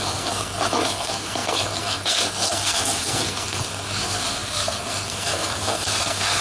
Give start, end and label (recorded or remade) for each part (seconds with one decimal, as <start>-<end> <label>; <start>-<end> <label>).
0.0-6.4 remade